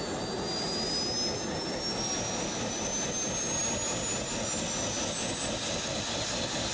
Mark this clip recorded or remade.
recorded